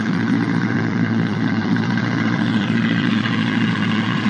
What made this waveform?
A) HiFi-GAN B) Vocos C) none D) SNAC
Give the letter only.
B